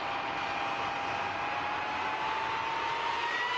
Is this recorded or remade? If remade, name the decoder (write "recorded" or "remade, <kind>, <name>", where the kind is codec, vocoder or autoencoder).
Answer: recorded